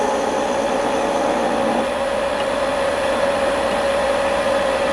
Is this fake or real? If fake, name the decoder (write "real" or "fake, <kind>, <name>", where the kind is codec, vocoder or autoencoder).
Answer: real